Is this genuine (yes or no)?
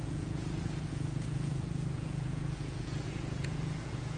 no